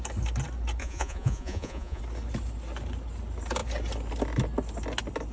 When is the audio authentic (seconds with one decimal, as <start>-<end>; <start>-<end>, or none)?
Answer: 0.0-0.8; 2.0-5.3